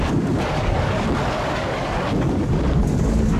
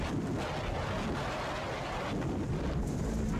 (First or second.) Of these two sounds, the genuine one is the second